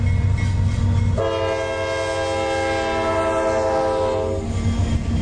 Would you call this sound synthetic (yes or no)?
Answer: no